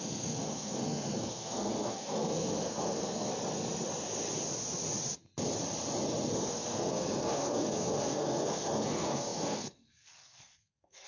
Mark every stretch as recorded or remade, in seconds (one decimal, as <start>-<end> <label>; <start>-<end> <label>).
0.0-3.3 remade; 3.3-6.3 recorded; 6.3-11.1 remade